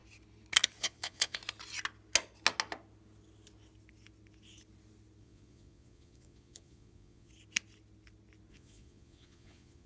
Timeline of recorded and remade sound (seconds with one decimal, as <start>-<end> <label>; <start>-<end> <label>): 0.0-0.8 recorded; 0.8-1.4 remade; 1.4-5.2 recorded; 5.2-7.3 remade; 7.3-8.5 recorded; 8.5-9.9 remade